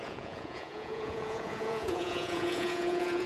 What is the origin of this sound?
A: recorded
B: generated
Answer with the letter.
B